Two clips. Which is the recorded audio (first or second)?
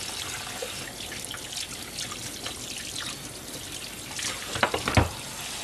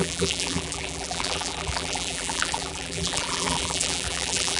first